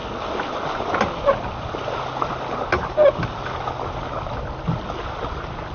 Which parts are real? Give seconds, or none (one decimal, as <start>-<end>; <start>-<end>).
0.0-5.7